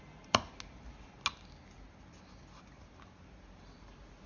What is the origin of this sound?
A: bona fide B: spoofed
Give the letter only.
A